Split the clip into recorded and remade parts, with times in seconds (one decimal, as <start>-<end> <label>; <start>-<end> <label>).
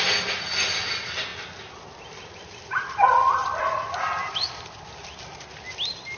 0.0-4.2 recorded; 4.2-4.7 remade; 4.7-6.2 recorded